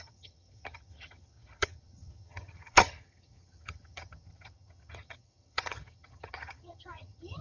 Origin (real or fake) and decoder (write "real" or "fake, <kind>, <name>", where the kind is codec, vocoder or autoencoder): fake, vocoder, HiFi-GAN